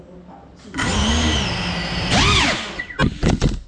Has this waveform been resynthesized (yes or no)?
no